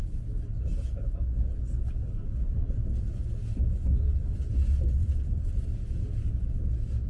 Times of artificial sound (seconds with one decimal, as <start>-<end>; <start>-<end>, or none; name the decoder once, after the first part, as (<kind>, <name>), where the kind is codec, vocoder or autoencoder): 5.0-5.5 (vocoder, BigVGAN v2)